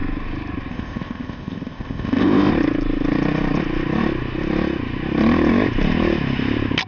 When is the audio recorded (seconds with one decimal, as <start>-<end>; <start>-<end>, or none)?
0.0-0.7; 2.5-6.9